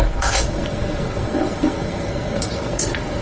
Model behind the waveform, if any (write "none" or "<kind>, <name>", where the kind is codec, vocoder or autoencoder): codec, SNAC